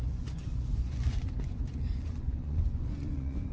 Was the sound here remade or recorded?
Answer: remade